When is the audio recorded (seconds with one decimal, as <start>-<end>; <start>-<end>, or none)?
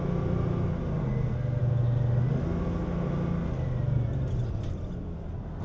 0.0-1.0; 1.6-5.6